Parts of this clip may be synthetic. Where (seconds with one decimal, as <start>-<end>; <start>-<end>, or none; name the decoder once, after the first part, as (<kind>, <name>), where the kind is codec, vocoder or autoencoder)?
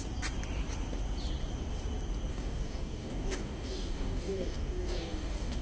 2.3-5.6 (codec, DAC)